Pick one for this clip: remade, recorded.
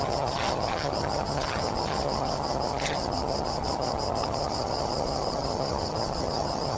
remade